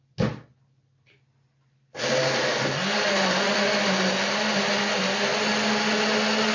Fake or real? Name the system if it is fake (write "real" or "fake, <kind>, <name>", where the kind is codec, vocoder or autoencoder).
real